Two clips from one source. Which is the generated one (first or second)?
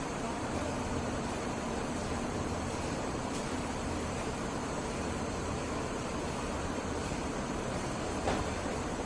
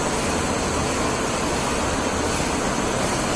first